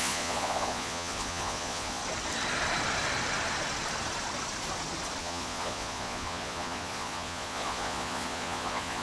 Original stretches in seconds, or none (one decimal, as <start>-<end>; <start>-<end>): 2.0-5.2